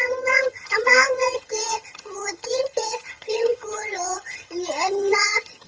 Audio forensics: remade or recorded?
remade